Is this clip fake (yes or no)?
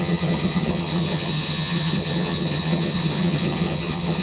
yes